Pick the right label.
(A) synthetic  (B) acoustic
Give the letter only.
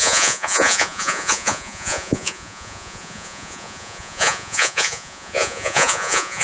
A